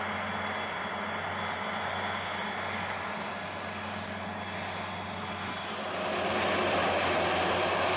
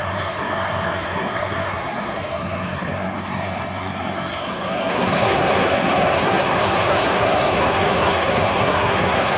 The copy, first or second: second